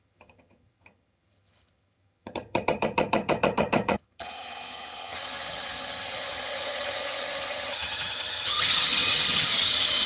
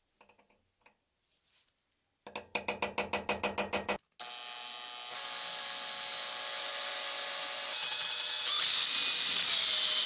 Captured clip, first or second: second